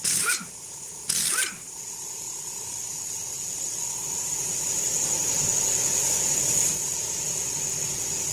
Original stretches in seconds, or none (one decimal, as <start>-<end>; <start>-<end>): 0.0-1.6; 3.8-8.3